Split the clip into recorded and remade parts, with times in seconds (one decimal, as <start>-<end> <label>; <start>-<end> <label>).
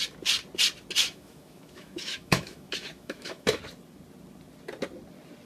0.0-1.0 recorded; 1.0-3.6 remade; 3.6-5.5 recorded